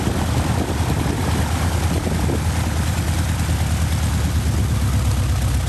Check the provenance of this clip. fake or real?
real